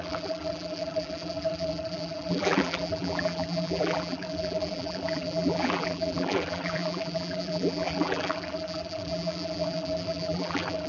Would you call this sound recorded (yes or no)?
no